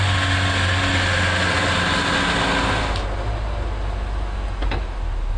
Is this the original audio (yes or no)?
yes